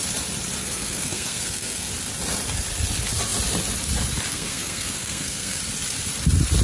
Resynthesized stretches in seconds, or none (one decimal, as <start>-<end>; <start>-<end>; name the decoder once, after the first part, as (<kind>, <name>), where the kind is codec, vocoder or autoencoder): 0.6-1.9 (codec, SNAC); 4.3-5.6